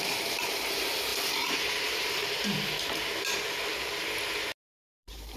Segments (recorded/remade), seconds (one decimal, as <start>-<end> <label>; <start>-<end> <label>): 0.0-2.2 remade; 2.2-5.0 recorded; 5.0-5.4 remade

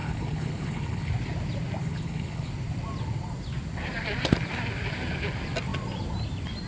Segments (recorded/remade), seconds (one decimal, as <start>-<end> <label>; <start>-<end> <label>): 0.0-1.1 remade; 1.1-1.8 recorded; 1.8-2.5 remade; 2.5-6.7 recorded

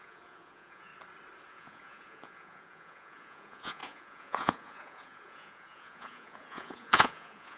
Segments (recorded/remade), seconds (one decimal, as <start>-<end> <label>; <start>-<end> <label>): 0.0-0.9 remade; 0.9-1.5 recorded; 1.5-7.6 remade

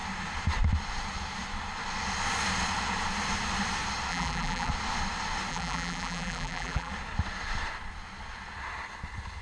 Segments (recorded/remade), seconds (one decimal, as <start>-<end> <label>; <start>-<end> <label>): 0.0-4.1 recorded; 4.1-4.7 remade; 4.7-5.5 recorded; 5.5-6.9 remade; 6.9-9.4 recorded

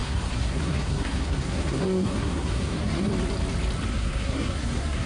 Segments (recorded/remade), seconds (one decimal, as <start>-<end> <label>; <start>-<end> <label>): 0.0-3.1 remade; 3.1-3.9 recorded; 3.9-5.1 remade

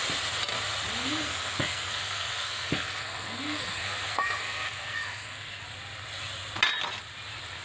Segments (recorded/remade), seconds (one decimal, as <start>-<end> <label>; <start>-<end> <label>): 0.0-1.0 recorded; 1.0-5.6 remade; 5.6-7.6 recorded

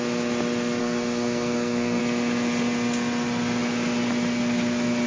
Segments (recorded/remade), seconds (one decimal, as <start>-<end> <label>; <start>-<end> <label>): 0.0-0.8 recorded; 0.8-2.0 remade; 2.0-5.1 recorded